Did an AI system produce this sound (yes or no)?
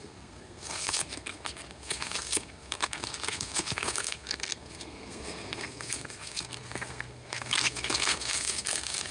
yes